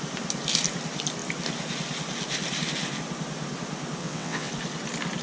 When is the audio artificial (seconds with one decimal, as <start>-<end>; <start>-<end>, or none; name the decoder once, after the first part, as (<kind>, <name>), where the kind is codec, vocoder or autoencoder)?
4.0-4.5 (vocoder, WaveNeXt)